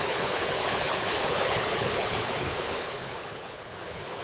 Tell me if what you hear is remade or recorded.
remade